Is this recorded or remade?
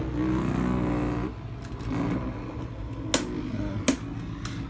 recorded